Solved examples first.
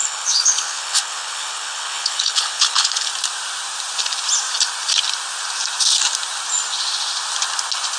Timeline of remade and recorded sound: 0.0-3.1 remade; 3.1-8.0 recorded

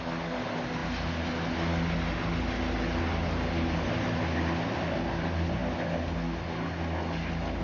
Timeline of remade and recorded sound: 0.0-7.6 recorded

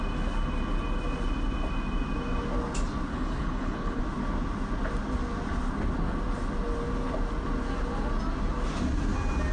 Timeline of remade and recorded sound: 0.0-3.1 recorded; 3.1-4.0 remade; 4.0-9.5 recorded

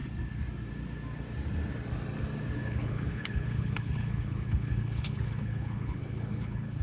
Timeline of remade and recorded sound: 0.0-2.6 recorded; 2.6-6.8 remade

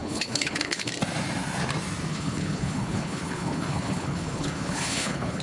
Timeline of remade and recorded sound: 0.0-0.9 remade; 0.9-2.1 recorded; 2.1-5.4 remade

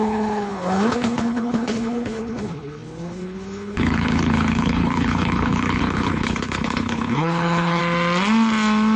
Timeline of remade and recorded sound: 0.0-7.8 remade; 7.8-9.0 recorded

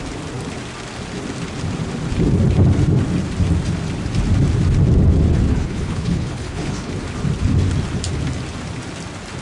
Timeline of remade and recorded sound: 0.0-5.5 recorded; 5.5-6.9 remade; 6.9-9.4 recorded